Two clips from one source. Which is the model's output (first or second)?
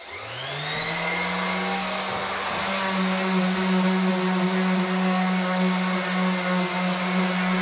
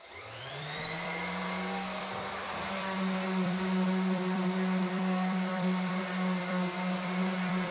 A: second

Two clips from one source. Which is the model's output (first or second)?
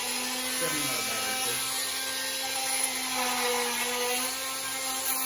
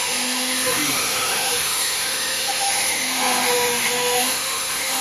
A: second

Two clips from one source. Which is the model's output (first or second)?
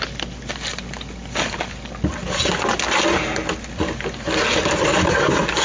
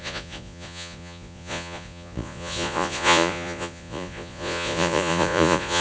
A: second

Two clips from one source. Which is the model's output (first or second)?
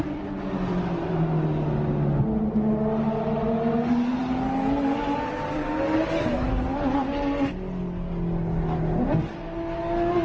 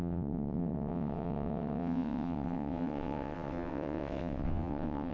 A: second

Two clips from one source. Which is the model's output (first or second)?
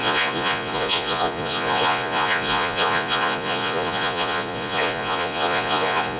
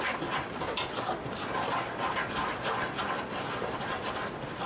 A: first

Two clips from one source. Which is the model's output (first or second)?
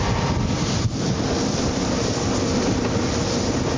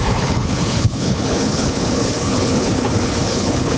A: second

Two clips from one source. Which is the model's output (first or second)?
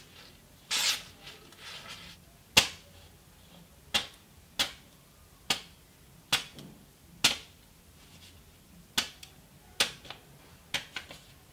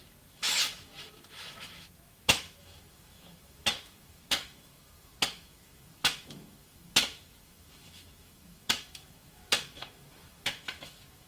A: second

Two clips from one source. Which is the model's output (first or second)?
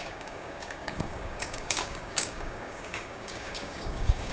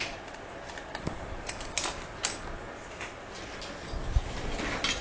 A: first